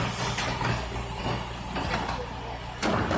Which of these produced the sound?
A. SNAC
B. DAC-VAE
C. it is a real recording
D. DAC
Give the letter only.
C